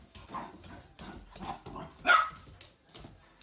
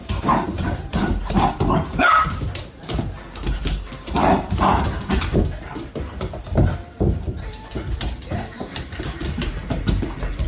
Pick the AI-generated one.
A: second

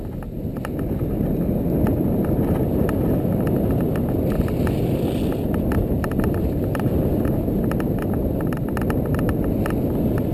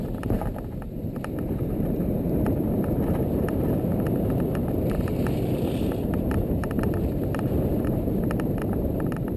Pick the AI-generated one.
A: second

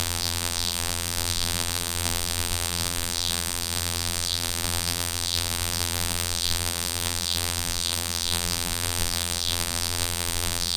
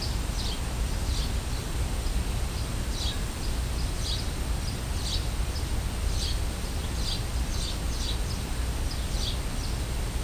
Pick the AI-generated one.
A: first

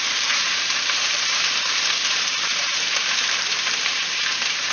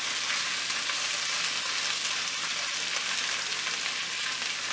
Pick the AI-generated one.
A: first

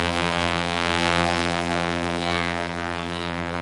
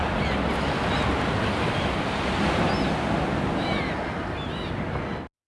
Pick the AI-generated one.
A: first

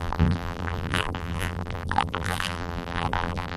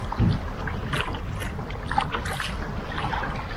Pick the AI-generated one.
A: first